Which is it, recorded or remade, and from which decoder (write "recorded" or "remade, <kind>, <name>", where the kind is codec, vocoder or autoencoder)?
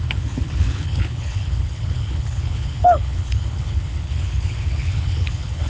remade, codec, HILCodec